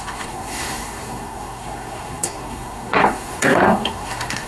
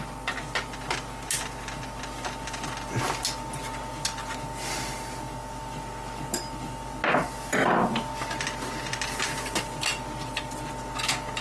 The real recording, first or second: second